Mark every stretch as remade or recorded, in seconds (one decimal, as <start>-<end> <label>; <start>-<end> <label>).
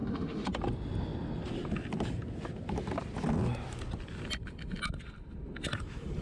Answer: 0.0-0.5 remade; 0.5-6.2 recorded